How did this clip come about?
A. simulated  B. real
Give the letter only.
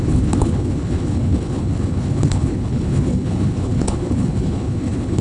A